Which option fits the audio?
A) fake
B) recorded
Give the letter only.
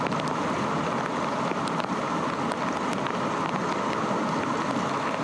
B